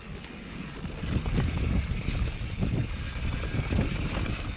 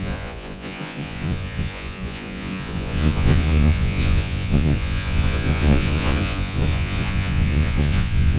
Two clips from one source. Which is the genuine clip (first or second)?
first